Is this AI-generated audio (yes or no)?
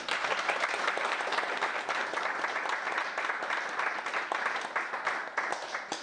no